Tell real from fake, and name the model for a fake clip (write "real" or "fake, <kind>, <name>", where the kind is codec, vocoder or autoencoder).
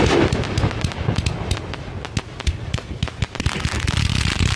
real